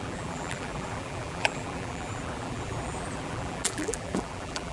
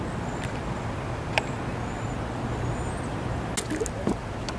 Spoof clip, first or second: first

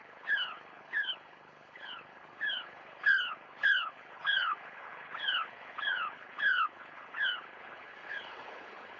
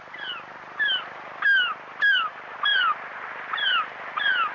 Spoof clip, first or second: first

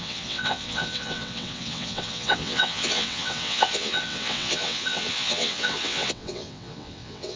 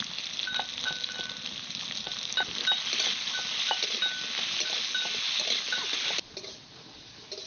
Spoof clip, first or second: first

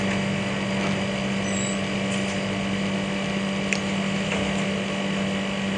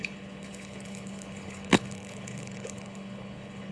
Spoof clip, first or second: second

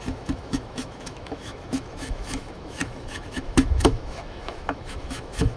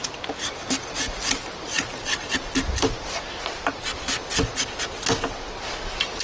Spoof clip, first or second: first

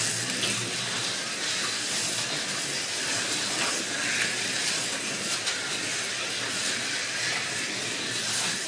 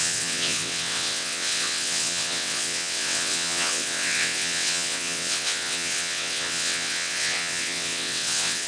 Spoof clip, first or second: second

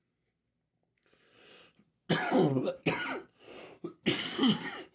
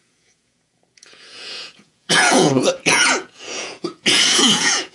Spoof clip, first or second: second